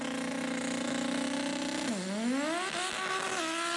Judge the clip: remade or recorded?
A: recorded